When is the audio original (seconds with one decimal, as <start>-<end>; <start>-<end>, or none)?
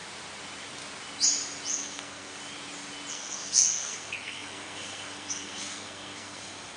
0.0-1.7; 2.4-3.1